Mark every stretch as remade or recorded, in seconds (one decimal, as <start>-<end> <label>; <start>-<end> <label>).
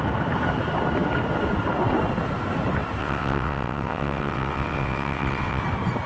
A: 0.0-3.0 recorded; 3.0-5.6 remade; 5.6-6.1 recorded